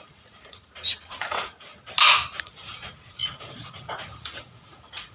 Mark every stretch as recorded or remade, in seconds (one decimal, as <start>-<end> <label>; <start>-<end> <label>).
0.0-1.7 remade; 1.7-2.4 recorded; 2.4-5.1 remade